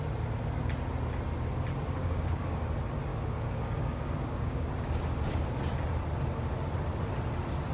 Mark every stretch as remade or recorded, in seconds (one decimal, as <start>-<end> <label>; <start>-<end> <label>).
0.0-2.0 recorded; 2.0-2.6 remade; 2.6-3.1 recorded; 3.1-4.7 remade; 4.7-7.7 recorded